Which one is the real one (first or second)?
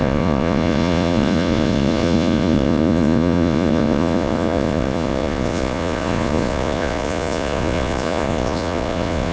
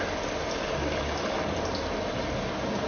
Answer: second